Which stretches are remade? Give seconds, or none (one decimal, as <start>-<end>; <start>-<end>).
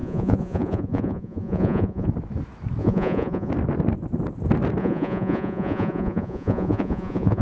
0.0-2.1; 2.8-3.5; 4.8-7.4